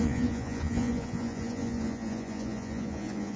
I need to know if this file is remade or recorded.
remade